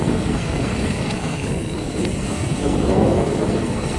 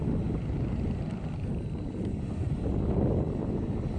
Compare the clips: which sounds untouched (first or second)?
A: second